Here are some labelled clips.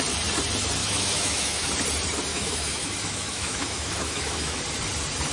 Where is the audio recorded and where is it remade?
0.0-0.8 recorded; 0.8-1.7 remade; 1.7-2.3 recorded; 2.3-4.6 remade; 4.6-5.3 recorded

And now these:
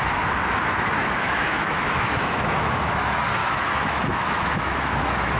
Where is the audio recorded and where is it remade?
0.0-1.0 recorded; 1.0-3.0 remade; 3.0-3.4 recorded; 3.4-5.4 remade

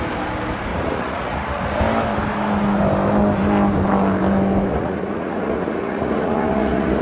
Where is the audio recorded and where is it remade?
0.0-0.7 recorded; 0.7-1.8 remade; 1.8-4.7 recorded; 4.7-7.0 remade

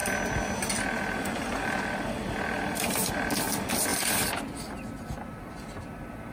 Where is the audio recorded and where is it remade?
0.0-3.1 recorded; 3.1-3.9 remade; 3.9-4.9 recorded; 4.9-6.3 remade

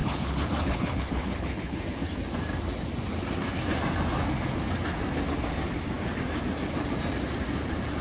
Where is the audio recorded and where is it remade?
0.0-1.8 remade; 1.8-8.0 recorded